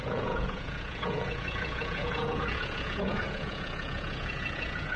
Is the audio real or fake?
fake